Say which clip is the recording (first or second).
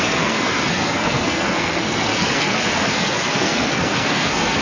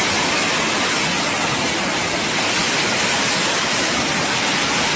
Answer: second